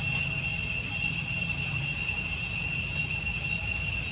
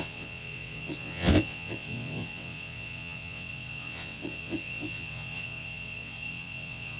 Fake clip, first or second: second